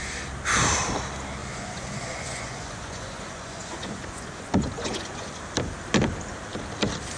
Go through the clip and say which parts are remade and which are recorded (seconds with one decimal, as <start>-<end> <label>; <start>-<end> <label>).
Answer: 0.0-1.4 recorded; 1.4-5.4 remade; 5.4-7.2 recorded